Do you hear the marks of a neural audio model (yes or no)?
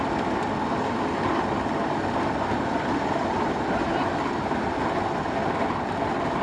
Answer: no